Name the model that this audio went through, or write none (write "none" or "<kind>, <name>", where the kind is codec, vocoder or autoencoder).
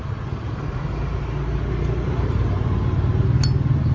none